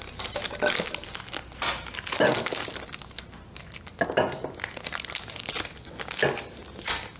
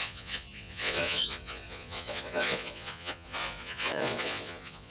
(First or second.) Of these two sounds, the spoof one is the second